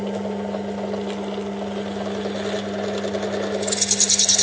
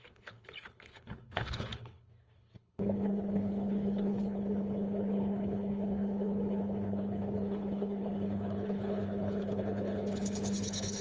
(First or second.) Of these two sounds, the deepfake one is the second